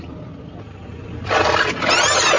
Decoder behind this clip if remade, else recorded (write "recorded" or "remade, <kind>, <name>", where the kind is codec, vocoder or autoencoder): recorded